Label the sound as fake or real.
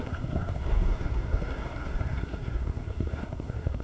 fake